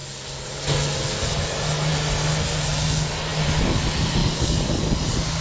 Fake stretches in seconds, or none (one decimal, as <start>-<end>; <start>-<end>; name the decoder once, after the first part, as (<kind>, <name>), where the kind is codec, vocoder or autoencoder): 4.2-4.8 (codec, DAC)